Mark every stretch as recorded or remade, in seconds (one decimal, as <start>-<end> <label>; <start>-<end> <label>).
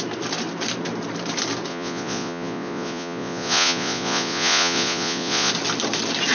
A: 0.0-1.7 recorded; 1.7-5.5 remade; 5.5-6.3 recorded